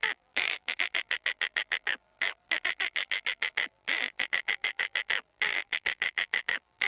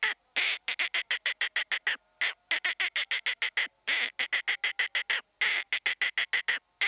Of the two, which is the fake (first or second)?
first